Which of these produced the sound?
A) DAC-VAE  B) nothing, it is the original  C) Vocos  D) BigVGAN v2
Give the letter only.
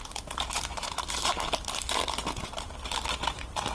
D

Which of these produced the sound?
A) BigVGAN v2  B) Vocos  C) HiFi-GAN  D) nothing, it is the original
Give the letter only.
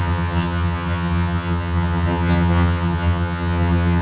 C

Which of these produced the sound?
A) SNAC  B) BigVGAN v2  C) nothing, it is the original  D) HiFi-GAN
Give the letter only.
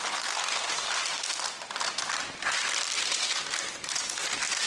C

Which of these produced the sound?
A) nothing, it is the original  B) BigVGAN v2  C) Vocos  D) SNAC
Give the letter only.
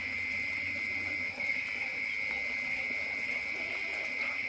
A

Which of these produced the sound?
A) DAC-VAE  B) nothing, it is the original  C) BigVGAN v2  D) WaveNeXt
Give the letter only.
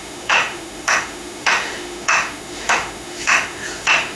A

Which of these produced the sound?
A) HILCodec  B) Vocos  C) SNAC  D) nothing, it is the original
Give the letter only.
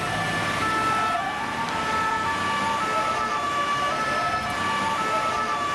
D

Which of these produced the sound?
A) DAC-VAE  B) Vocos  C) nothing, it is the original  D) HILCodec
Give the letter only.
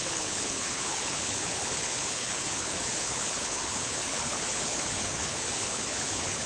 D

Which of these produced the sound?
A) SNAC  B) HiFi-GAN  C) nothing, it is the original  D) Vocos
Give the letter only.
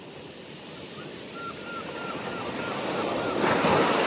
C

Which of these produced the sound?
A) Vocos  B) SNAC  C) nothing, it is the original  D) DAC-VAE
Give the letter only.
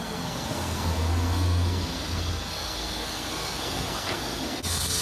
B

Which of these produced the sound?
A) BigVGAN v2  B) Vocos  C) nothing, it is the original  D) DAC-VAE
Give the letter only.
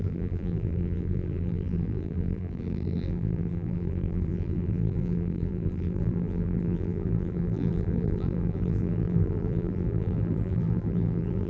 A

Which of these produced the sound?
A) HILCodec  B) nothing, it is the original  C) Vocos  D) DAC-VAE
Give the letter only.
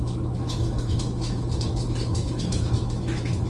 D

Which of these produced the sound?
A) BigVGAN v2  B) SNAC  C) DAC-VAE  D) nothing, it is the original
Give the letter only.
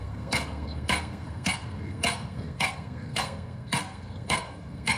B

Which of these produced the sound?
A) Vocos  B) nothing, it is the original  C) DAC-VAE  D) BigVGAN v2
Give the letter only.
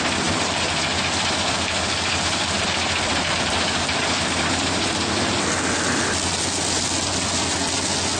B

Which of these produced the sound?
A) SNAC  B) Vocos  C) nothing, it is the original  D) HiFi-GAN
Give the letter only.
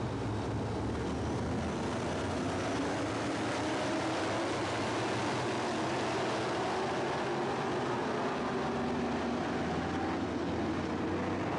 C